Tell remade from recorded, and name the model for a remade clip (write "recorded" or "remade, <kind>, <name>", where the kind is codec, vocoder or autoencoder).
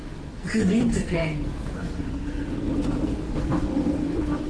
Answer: remade, codec, SNAC